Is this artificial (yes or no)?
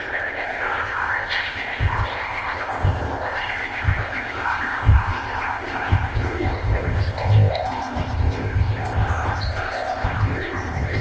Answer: yes